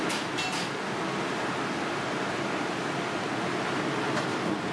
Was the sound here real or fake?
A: real